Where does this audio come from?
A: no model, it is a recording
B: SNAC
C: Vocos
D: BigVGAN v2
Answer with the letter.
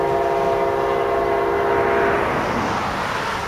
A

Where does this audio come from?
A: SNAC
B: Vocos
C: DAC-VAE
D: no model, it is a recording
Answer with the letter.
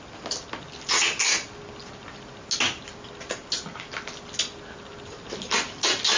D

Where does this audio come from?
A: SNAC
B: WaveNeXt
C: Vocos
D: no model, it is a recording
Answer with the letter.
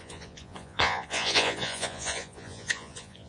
C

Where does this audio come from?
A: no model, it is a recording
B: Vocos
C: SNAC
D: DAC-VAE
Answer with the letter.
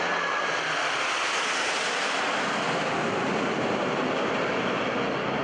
A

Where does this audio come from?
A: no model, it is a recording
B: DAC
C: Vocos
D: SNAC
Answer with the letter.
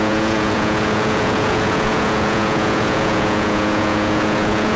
C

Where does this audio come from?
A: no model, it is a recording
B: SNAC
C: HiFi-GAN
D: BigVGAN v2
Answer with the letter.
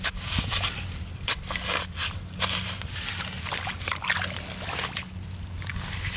A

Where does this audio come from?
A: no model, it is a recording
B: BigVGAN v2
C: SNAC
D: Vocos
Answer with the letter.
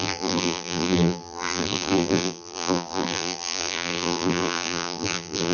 B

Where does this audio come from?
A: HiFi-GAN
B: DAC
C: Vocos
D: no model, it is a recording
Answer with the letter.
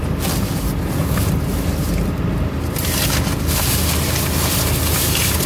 D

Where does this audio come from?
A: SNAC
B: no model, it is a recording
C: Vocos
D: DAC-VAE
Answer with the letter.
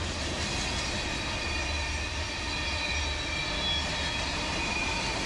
B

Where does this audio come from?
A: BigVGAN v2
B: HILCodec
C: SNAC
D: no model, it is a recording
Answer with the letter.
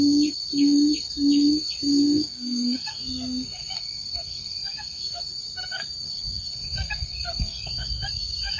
C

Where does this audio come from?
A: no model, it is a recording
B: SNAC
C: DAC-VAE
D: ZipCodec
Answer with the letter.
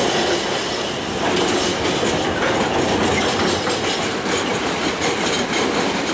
A